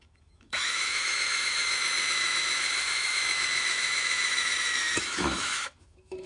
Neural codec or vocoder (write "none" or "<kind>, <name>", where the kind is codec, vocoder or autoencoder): autoencoder, DAC-VAE